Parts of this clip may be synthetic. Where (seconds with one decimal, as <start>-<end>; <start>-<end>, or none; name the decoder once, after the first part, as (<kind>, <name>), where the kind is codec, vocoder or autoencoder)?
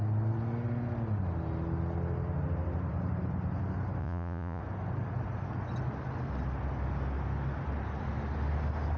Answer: 4.0-4.6 (vocoder, Vocos)